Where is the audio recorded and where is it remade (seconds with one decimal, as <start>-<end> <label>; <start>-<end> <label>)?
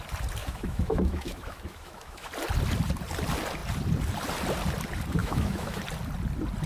0.0-0.4 recorded; 0.4-2.3 remade; 2.3-5.2 recorded; 5.2-5.8 remade; 5.8-6.7 recorded